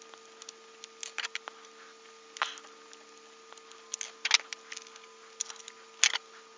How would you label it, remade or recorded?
recorded